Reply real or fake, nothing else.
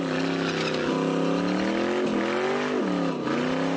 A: real